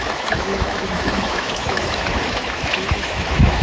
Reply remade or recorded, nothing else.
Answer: remade